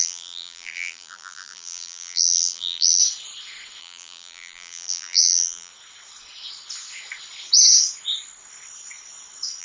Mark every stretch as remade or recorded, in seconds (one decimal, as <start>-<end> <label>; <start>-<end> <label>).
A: 0.0-3.0 remade; 3.0-3.8 recorded; 3.8-5.7 remade; 5.7-9.6 recorded